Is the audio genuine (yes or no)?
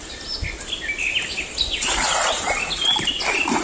yes